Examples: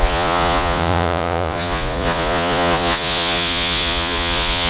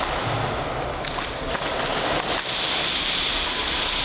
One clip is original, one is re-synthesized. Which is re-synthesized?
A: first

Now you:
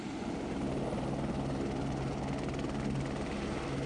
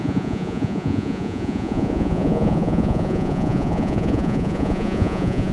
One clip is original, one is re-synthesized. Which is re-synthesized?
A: second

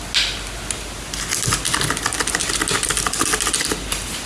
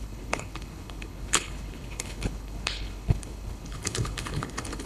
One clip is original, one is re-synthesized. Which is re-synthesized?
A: second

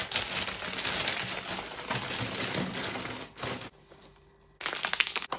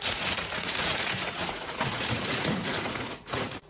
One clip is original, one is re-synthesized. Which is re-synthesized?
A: second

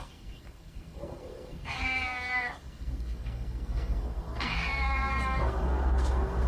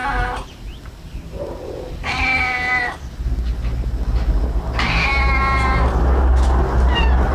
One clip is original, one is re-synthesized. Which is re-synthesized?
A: first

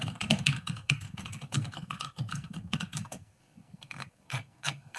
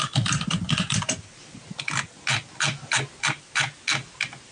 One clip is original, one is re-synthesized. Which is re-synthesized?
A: first